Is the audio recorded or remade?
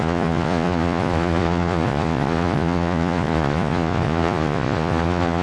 remade